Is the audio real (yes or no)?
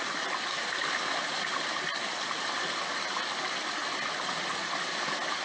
yes